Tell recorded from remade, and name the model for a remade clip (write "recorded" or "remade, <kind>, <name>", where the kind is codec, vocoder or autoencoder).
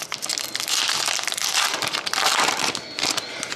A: recorded